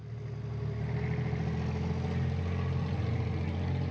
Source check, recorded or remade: recorded